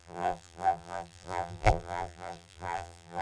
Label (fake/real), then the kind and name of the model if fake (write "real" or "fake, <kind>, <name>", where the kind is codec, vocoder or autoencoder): fake, vocoder, BigVGAN v2